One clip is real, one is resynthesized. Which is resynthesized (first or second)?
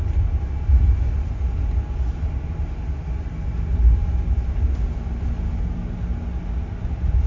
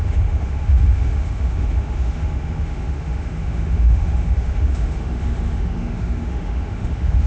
second